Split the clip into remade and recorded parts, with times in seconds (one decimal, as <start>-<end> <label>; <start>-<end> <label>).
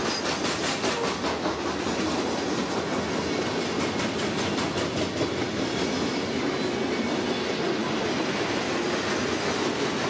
0.0-10.1 recorded